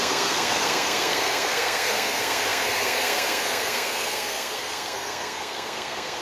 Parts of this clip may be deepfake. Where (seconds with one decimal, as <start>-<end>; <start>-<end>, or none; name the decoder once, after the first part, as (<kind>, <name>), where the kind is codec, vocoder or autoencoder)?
0.0-6.2 (codec, SNAC)